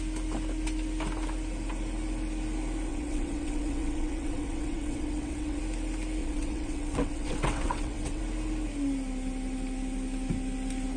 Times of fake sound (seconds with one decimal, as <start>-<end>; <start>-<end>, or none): 2.9-5.6; 6.2-8.2